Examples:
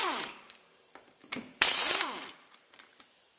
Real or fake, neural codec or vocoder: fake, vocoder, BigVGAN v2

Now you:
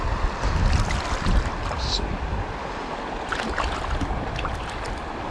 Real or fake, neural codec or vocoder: real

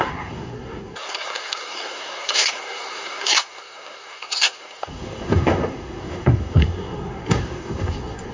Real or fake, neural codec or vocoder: fake, codec, SNAC